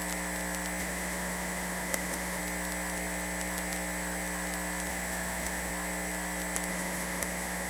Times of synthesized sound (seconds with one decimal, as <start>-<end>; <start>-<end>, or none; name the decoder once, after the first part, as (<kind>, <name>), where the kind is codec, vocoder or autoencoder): 0.8-2.4 (autoencoder, DAC-VAE); 4.9-5.7; 6.7-7.7